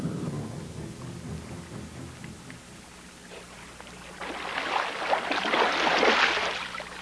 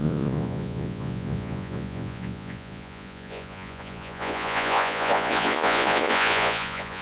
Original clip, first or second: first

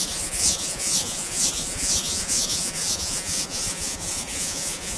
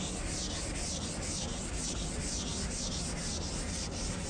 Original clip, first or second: second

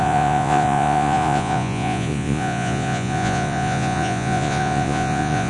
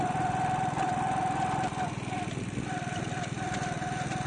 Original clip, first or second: second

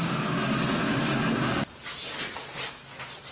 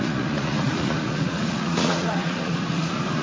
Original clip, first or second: first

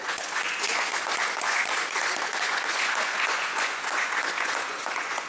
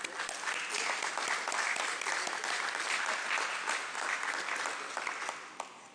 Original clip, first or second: second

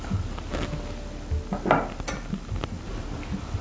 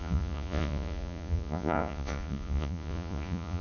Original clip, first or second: first